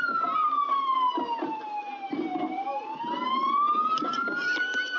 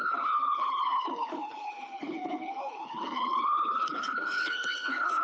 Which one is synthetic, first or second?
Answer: second